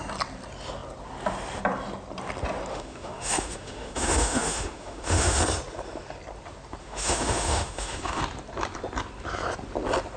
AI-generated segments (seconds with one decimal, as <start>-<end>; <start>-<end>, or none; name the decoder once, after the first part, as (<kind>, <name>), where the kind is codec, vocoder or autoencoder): 2.7-5.4 (autoencoder, DAC-VAE); 6.8-8.2